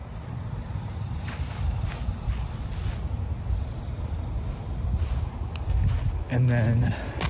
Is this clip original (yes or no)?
yes